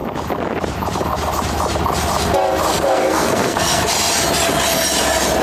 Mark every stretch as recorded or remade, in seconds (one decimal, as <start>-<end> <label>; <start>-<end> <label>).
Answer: 0.0-2.7 recorded; 2.7-3.9 remade; 3.9-5.4 recorded

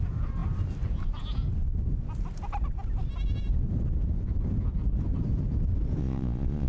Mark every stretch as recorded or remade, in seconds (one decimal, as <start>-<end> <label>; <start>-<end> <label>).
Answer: 0.0-6.0 recorded; 6.0-6.7 remade

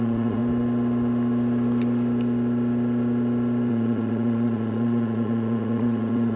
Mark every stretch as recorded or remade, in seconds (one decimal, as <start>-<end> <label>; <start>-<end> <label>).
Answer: 0.0-0.4 remade; 0.4-3.7 recorded; 3.7-6.4 remade

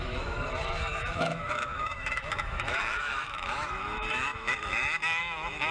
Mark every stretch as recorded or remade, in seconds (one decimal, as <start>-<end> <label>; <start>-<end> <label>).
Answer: 0.0-5.7 remade

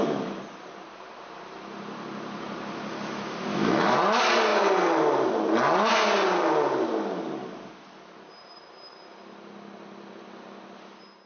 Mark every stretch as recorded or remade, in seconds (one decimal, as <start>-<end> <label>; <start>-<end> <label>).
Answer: 0.0-3.5 recorded; 3.5-4.0 remade; 4.0-11.3 recorded

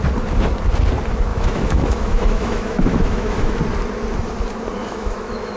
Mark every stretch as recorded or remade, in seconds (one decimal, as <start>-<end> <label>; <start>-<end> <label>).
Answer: 0.0-1.3 recorded; 1.3-3.6 remade; 3.6-4.8 recorded; 4.8-5.6 remade

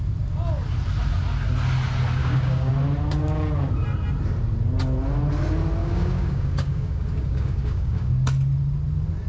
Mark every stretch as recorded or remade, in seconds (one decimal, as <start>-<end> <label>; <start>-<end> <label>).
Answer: 0.0-2.2 recorded; 2.2-2.7 remade; 2.7-5.8 recorded; 5.8-8.1 remade; 8.1-9.3 recorded

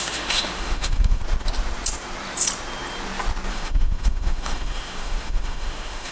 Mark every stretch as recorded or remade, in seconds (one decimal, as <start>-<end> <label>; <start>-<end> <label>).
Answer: 0.0-1.2 remade; 1.2-3.5 recorded; 3.5-6.1 remade